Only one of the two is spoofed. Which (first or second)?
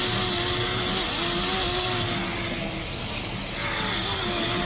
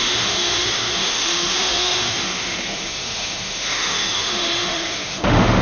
second